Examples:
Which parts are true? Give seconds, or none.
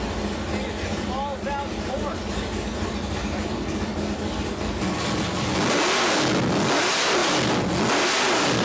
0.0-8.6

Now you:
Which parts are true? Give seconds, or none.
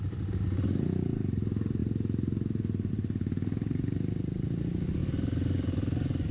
0.0-6.3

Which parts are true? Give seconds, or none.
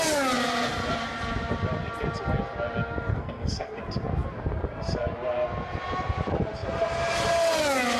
0.0-3.1; 3.8-8.0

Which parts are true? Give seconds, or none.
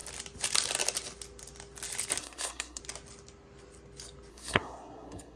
0.0-2.2; 2.8-4.3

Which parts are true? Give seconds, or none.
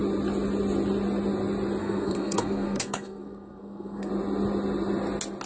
0.0-1.8; 4.1-5.5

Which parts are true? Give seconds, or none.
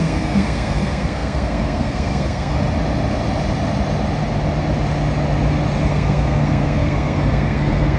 2.5-5.9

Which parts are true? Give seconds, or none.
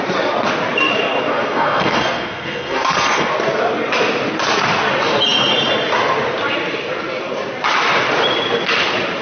0.0-1.3; 3.3-9.2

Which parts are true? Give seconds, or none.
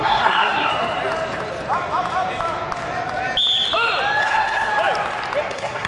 0.7-4.2; 4.7-5.4